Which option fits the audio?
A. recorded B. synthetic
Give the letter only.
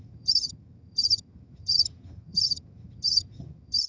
B